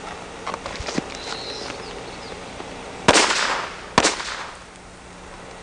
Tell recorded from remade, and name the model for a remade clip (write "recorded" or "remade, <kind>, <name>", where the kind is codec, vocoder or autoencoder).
recorded